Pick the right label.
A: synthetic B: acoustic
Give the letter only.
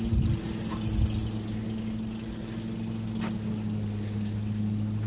B